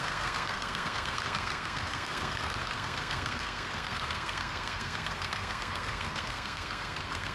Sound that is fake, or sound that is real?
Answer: fake